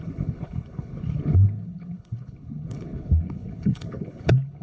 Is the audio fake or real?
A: fake